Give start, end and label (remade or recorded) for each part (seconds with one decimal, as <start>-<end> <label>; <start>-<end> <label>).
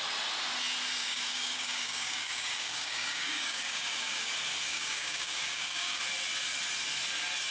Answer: 0.0-1.0 recorded; 1.0-4.3 remade; 4.3-4.7 recorded; 4.7-6.0 remade; 6.0-7.5 recorded